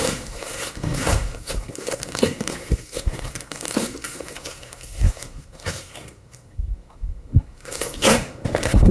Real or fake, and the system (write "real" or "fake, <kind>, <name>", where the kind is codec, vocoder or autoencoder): fake, codec, SNAC